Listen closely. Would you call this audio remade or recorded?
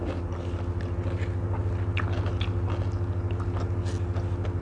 recorded